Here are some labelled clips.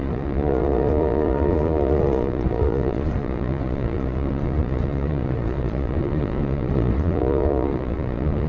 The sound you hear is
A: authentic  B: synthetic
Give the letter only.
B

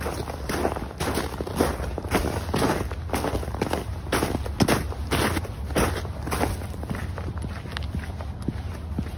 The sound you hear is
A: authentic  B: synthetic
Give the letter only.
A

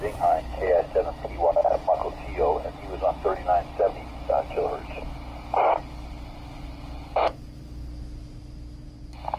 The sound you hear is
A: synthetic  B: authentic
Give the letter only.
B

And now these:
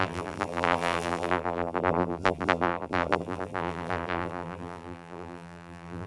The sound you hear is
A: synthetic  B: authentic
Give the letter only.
A